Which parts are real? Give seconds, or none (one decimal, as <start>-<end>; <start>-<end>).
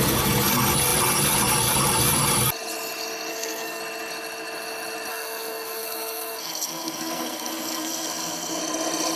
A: 0.0-3.3; 3.8-5.1; 8.6-9.2